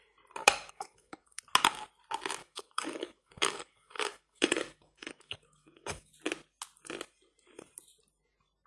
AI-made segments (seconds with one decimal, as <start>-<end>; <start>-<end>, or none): 0.4-1.4; 2.4-6.1